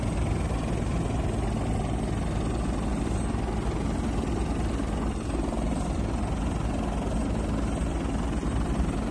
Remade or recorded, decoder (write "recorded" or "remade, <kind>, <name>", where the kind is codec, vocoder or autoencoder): recorded